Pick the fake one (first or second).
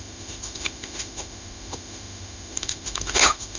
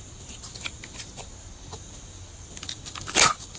first